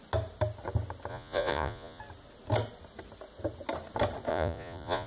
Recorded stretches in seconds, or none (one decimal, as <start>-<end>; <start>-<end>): 0.0-1.1; 2.0-4.3